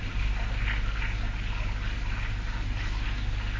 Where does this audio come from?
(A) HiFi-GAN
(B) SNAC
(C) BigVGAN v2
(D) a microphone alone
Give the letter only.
D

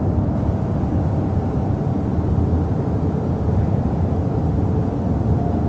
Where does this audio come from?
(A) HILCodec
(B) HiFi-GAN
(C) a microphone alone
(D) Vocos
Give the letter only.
C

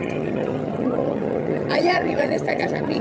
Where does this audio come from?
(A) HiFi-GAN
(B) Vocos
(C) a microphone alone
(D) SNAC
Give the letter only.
A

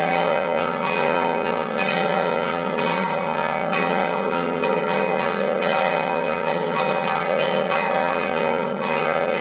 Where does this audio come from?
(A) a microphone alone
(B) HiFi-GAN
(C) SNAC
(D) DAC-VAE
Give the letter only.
B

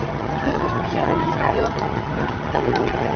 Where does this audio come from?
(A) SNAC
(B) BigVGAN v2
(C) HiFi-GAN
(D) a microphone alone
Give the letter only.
C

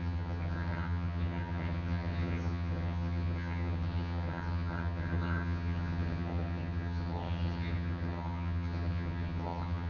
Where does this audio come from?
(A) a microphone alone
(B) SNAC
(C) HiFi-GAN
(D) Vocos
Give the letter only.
C